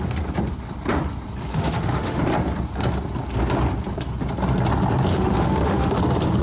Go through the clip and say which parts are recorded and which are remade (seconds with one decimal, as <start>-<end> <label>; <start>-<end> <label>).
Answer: 0.0-1.5 recorded; 1.5-2.2 remade; 2.2-5.1 recorded; 5.1-6.0 remade; 6.0-6.4 recorded